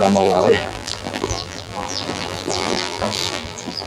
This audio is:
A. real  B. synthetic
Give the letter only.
B